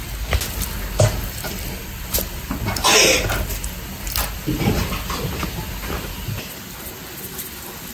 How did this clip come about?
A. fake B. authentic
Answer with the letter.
B